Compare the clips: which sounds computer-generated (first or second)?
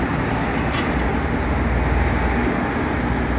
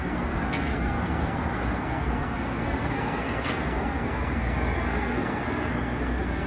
second